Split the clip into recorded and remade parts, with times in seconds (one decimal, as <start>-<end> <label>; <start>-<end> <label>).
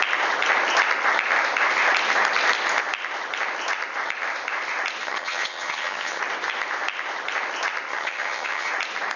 0.0-5.0 recorded; 5.0-6.2 remade; 6.2-7.9 recorded; 7.9-8.7 remade; 8.7-9.2 recorded